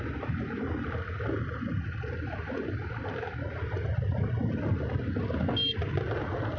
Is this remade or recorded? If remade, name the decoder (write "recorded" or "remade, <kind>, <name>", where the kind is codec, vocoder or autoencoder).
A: recorded